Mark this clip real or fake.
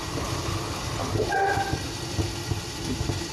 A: real